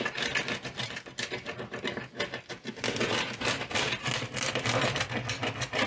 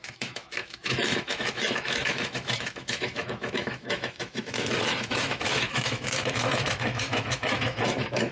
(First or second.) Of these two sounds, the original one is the first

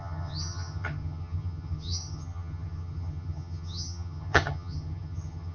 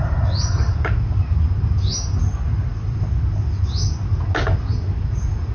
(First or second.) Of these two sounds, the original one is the second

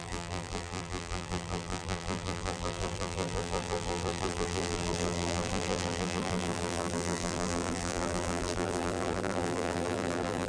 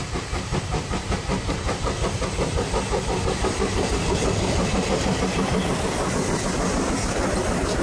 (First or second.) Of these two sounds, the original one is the second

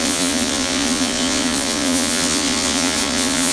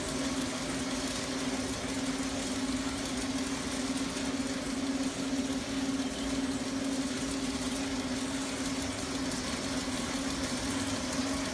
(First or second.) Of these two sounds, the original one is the second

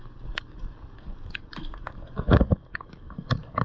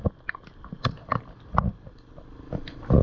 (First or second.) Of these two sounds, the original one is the second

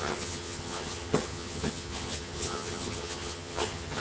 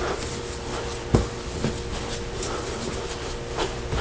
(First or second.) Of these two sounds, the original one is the second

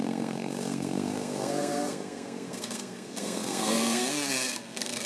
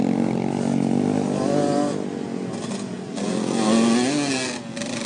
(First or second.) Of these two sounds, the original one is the second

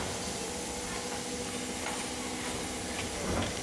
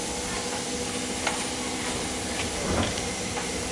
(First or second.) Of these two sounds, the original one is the first